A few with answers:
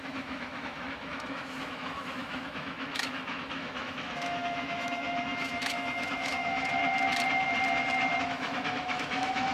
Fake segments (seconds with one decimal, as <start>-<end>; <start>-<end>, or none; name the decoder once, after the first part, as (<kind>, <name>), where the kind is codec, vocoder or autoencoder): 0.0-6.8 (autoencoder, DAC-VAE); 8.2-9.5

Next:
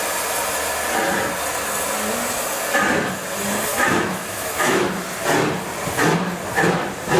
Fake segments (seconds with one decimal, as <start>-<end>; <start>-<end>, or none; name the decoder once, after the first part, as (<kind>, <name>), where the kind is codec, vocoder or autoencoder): 3.7-4.9 (autoencoder, DAC-VAE)

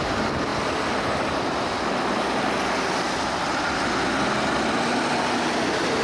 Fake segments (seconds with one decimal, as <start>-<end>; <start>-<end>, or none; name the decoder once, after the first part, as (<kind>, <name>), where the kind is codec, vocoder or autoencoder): none